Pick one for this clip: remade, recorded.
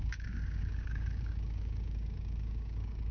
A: remade